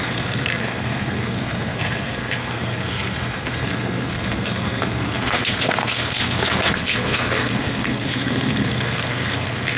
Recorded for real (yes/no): no